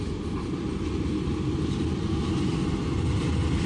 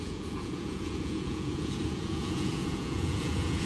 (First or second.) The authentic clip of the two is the first